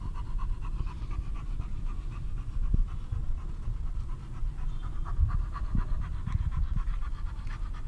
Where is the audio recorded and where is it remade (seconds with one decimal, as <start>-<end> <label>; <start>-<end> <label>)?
0.0-3.2 recorded; 3.2-3.9 remade; 3.9-7.9 recorded